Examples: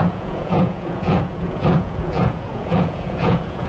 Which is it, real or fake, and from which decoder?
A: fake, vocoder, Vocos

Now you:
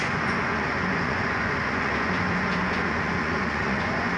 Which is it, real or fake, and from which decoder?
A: fake, vocoder, Vocos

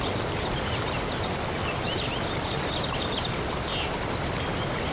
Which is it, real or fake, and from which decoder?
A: real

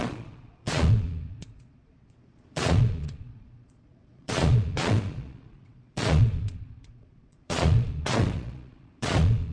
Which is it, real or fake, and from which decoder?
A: fake, vocoder, Vocos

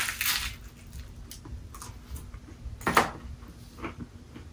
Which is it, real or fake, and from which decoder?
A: real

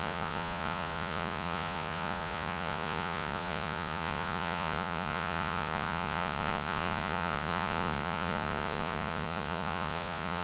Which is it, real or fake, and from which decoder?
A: fake, vocoder, Vocos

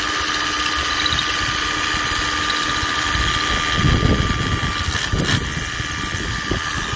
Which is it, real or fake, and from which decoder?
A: real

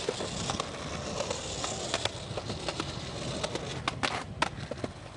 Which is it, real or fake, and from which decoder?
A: real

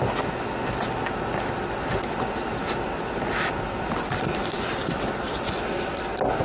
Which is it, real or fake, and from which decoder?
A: real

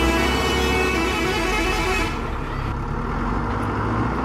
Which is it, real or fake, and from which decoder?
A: real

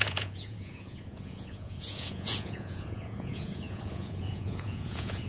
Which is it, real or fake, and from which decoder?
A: fake, vocoder, Vocos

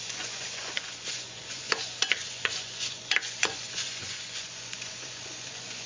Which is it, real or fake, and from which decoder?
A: fake, vocoder, Vocos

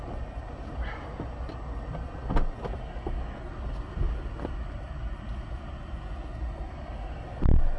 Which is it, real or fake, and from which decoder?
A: real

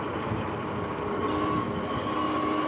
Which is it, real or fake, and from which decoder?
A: real